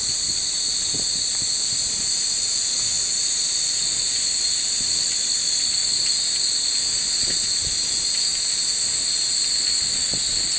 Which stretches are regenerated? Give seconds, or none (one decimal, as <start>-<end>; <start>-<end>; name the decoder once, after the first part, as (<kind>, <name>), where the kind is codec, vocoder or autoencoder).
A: none